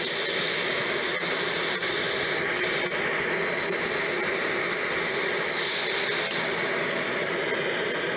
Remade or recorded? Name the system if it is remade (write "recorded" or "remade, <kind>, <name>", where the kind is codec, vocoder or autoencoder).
recorded